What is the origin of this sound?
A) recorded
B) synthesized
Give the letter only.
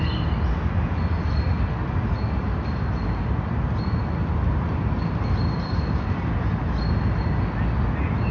A